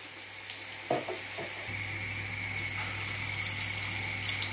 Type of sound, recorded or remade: recorded